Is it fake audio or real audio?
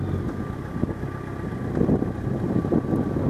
real